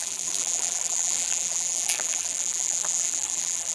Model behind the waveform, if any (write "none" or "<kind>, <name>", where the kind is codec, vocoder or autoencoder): vocoder, BigVGAN v2